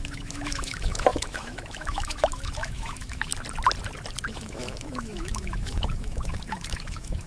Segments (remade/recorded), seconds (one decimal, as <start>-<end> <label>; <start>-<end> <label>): 0.0-3.3 remade; 3.3-4.3 recorded; 4.3-7.3 remade